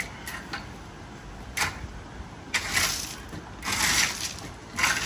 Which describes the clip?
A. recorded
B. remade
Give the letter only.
A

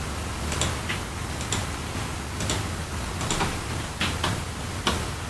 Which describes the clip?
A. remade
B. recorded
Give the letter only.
B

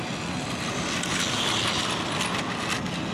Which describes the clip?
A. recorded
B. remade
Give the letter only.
A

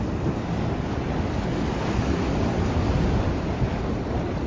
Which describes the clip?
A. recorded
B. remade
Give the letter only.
A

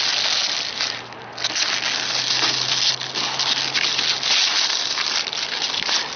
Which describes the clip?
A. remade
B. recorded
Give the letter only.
B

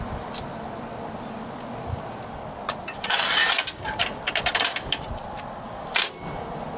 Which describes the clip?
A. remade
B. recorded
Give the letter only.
A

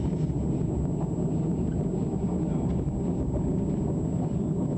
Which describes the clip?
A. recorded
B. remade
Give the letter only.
A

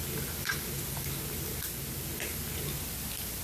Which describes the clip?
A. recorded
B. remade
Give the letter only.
A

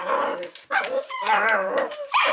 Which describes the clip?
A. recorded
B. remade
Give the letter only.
B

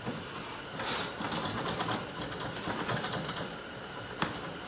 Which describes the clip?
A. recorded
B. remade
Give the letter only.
B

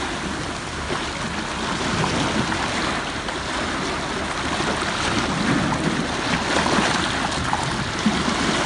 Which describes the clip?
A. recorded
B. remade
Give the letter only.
A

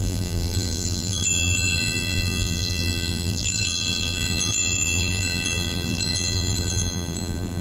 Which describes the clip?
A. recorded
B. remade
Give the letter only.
B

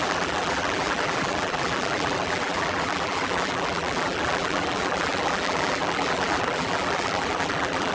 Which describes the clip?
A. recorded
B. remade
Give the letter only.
B